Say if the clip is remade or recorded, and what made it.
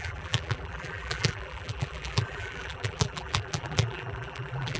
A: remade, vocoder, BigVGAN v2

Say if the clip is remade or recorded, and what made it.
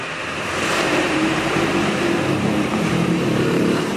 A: remade, vocoder, BigVGAN v2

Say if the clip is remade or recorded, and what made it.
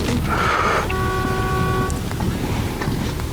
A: recorded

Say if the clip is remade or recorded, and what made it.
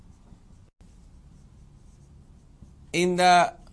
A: recorded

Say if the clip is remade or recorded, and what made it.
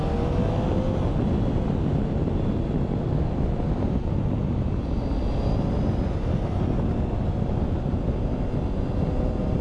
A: recorded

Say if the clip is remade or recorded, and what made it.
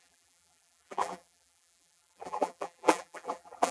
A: remade, vocoder, BigVGAN v2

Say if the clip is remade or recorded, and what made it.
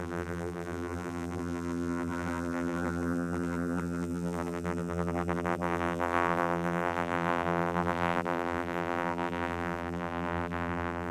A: remade, vocoder, BigVGAN v2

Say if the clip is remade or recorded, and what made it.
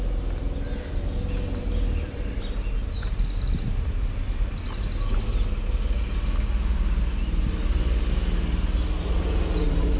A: recorded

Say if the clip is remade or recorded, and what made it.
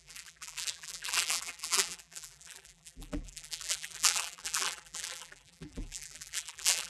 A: remade, vocoder, BigVGAN v2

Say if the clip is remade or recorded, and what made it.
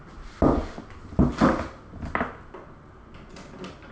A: recorded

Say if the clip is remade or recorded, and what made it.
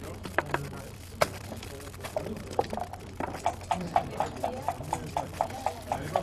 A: remade, vocoder, BigVGAN v2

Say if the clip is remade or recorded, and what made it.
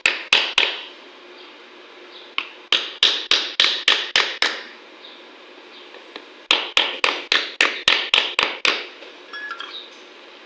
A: recorded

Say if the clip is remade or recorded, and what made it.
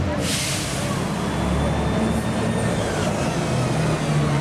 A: recorded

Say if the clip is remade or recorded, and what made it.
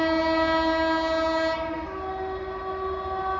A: recorded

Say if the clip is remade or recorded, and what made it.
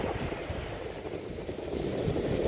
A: remade, vocoder, BigVGAN v2